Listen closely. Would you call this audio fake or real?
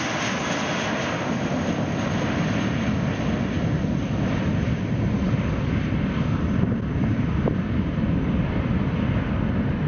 real